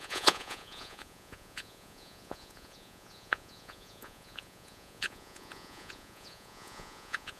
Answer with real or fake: fake